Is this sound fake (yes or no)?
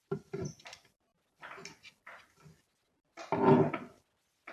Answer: no